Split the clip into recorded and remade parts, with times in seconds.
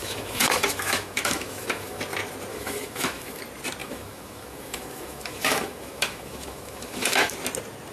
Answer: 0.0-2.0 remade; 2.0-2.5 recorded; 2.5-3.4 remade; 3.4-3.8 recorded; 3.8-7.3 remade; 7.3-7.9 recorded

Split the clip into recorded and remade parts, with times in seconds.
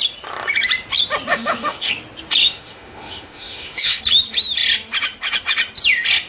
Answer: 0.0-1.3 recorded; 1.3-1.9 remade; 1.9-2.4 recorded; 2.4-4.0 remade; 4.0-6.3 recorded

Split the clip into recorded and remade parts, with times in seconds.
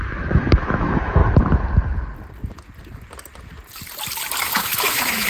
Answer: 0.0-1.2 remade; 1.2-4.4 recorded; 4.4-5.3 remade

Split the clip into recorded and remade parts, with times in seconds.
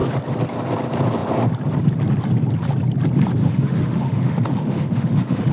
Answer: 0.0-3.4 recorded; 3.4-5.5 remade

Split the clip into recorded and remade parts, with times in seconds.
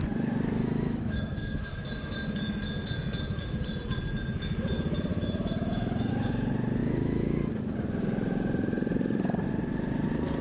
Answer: 0.0-0.6 recorded; 0.6-1.8 remade; 1.8-5.1 recorded; 5.1-6.1 remade; 6.1-6.8 recorded; 6.8-7.5 remade; 7.5-10.4 recorded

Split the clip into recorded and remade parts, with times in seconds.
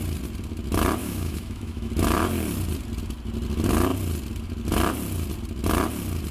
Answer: 0.0-1.0 recorded; 1.0-1.9 remade; 1.9-6.3 recorded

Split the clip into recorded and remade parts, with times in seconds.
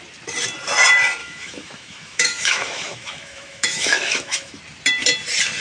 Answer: 0.0-1.2 recorded; 1.2-4.6 remade; 4.6-5.6 recorded